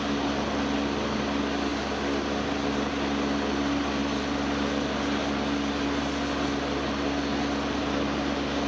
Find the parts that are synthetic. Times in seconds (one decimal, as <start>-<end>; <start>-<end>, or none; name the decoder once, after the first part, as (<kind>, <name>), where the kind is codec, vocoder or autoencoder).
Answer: none